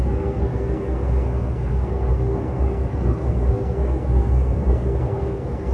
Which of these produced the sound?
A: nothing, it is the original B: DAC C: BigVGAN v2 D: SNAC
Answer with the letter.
D